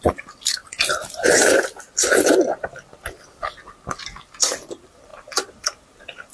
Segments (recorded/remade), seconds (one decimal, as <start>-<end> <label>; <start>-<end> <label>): 0.0-0.6 remade; 0.6-4.4 recorded; 4.4-6.3 remade